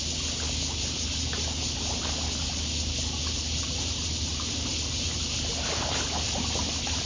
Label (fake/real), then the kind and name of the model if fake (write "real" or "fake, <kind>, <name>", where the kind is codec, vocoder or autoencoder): real